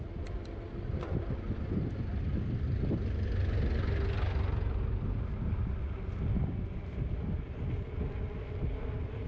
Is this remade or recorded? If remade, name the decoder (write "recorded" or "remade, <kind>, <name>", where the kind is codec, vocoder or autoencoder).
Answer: recorded